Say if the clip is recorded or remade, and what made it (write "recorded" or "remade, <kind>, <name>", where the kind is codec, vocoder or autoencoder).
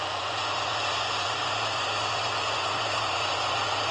remade, vocoder, Vocos